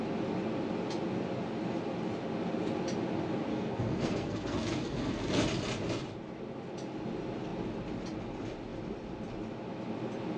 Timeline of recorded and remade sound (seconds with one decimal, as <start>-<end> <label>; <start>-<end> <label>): 0.0-3.5 recorded; 3.5-5.4 remade; 5.4-10.4 recorded